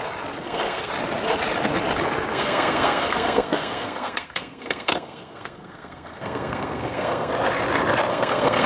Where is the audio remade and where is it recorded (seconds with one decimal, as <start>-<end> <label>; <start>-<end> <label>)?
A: 0.0-0.4 recorded; 0.4-0.9 remade; 0.9-2.3 recorded; 2.3-7.3 remade; 7.3-8.1 recorded; 8.1-8.7 remade